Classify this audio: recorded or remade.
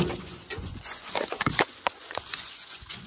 remade